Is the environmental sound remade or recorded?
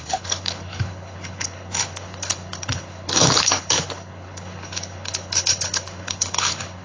remade